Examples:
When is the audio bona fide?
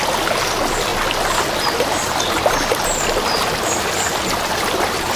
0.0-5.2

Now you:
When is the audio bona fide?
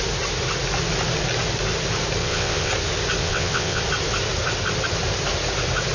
0.0-2.2; 2.7-3.2; 3.8-5.9